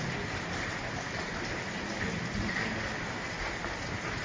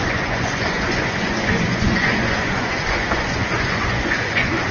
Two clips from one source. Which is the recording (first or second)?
first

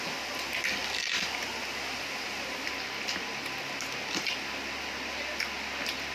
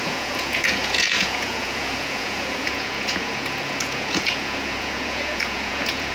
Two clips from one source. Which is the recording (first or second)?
first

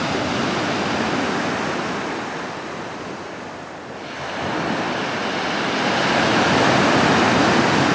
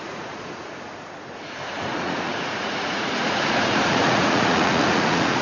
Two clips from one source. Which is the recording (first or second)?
first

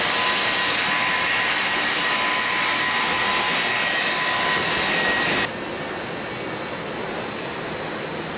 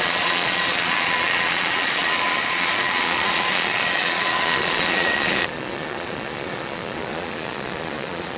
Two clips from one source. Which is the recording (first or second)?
first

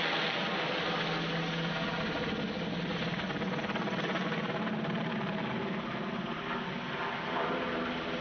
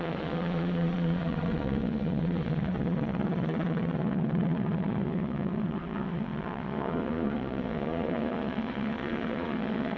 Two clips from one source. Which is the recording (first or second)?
first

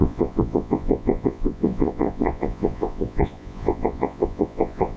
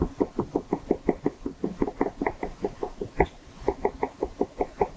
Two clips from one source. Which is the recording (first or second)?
second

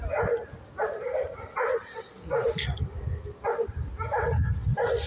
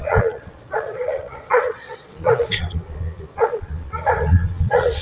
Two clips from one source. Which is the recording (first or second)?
first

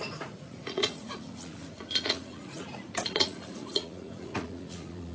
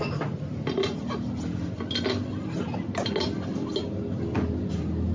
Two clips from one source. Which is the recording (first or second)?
second